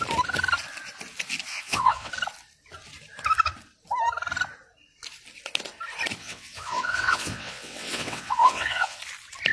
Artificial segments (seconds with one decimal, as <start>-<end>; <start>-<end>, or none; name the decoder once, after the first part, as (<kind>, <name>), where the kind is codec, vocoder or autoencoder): 1.5-2.1 (vocoder, WaveNeXt); 6.2-9.0